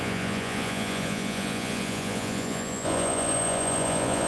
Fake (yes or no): yes